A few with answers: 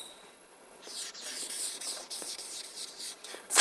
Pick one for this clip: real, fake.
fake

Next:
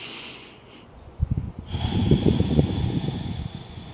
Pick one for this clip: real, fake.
fake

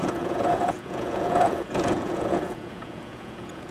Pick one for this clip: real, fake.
fake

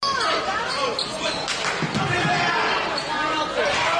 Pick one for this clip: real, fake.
real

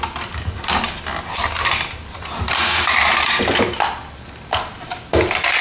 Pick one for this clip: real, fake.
real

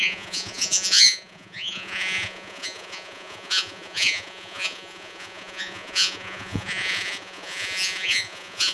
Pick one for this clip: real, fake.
fake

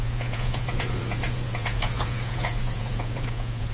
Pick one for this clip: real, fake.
fake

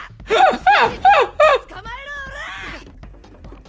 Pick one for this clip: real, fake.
real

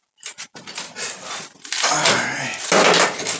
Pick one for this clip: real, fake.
real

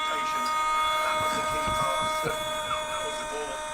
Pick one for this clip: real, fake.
real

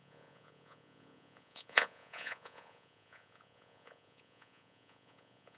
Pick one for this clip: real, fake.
fake